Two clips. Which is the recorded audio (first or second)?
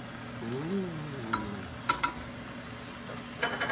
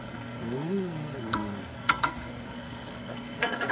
first